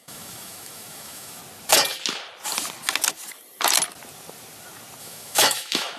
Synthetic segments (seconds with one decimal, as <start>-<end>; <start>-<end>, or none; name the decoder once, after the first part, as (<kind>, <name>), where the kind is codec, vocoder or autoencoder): 0.0-1.4 (autoencoder, DAC-VAE); 5.0-6.0